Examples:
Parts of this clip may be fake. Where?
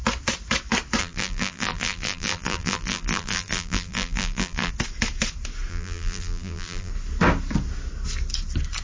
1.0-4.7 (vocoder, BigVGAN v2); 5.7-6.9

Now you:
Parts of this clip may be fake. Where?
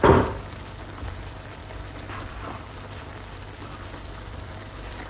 0.0-5.1 (vocoder, BigVGAN v2)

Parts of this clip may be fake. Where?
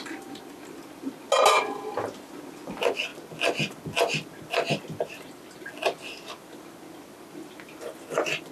none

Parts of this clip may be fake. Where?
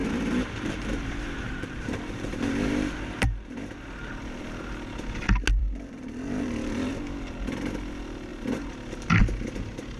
0.0-3.7 (vocoder, BigVGAN v2); 5.6-6.9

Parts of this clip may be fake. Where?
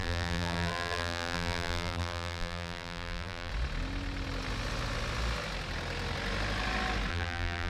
0.0-3.5 (vocoder, BigVGAN v2); 7.1-7.7